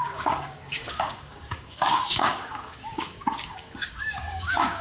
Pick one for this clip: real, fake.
fake